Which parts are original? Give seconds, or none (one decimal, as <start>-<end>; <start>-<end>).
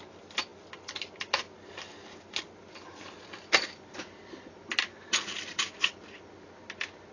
0.0-7.1